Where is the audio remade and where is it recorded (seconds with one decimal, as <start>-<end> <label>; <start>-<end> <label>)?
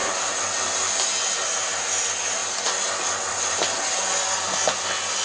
0.0-2.4 recorded; 2.4-4.1 remade; 4.1-5.2 recorded